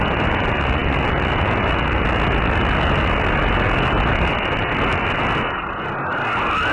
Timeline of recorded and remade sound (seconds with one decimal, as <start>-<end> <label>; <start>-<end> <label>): 0.0-6.7 recorded